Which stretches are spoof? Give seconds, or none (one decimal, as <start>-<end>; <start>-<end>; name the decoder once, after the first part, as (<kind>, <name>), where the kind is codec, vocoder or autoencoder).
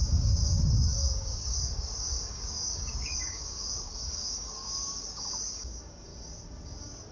0.0-6.1 (codec, DAC)